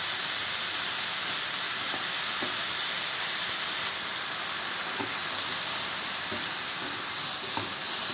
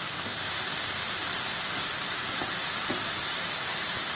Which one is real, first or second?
first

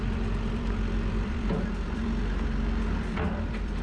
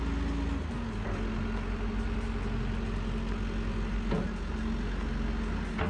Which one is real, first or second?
second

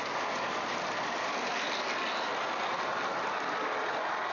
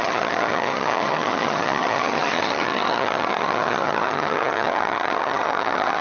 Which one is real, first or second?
first